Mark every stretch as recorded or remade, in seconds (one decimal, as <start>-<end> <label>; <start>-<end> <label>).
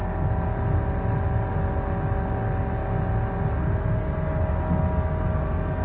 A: 0.0-5.8 recorded